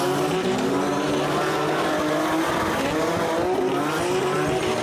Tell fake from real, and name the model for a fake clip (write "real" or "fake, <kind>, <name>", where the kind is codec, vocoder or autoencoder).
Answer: real